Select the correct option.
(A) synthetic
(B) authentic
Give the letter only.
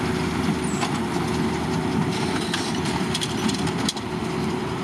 B